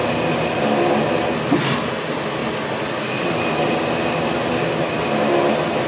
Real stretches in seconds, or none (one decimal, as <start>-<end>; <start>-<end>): 0.0-5.9